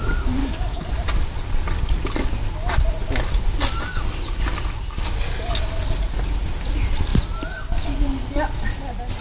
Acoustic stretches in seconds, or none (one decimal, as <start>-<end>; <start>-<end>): 0.0-0.4; 0.9-9.2